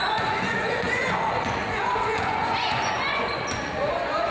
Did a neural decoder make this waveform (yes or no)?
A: yes